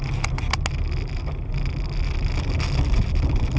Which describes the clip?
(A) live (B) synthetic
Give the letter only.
A